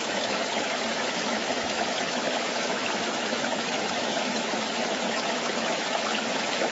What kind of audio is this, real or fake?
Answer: fake